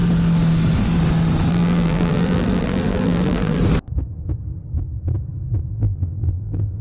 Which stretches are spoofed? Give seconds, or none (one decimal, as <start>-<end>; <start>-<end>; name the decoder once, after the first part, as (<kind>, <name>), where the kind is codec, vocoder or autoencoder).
1.5-3.6 (vocoder, BigVGAN v2); 5.7-6.8